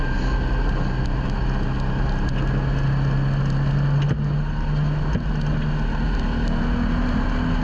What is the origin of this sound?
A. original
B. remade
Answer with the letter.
A